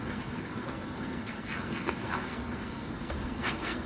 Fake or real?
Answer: fake